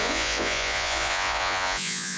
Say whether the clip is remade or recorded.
remade